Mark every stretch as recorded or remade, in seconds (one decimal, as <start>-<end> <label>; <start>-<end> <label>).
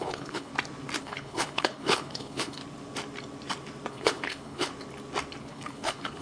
0.0-0.5 remade; 0.5-1.0 recorded; 1.0-2.6 remade; 2.6-3.9 recorded; 3.9-4.7 remade; 4.7-5.4 recorded; 5.4-6.2 remade